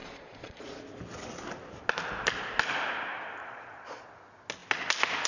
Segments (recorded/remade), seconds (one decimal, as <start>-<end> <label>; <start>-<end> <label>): 0.0-0.8 remade; 0.8-3.4 recorded; 3.4-4.1 remade; 4.1-5.3 recorded